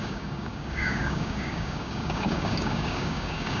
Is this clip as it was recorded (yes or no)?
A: no